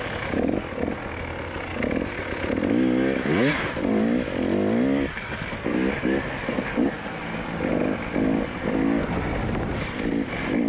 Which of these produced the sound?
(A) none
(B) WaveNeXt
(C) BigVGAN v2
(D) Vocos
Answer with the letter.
A